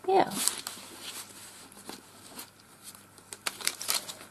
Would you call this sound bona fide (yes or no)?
yes